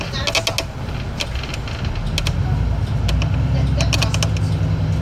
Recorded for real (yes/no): yes